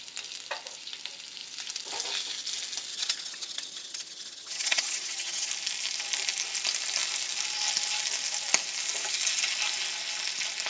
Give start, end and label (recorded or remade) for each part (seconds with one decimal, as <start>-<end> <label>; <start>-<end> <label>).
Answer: 0.0-2.9 recorded; 2.9-5.5 remade; 5.5-10.7 recorded